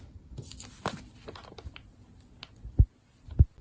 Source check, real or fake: real